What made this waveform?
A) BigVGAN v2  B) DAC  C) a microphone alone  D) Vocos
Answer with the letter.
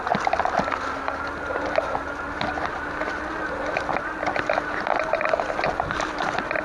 C